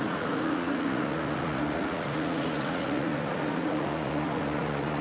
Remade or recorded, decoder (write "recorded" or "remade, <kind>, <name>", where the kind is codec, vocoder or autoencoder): remade, vocoder, Vocos